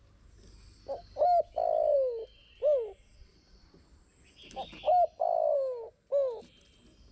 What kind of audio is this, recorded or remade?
recorded